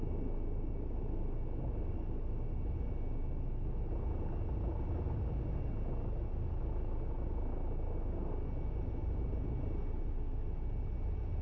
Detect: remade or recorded recorded